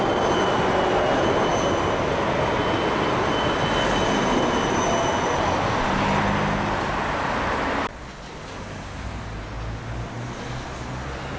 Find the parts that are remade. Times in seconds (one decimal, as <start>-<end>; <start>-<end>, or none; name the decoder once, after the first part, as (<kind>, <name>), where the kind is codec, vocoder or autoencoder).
none